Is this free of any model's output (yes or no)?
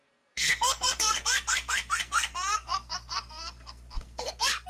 no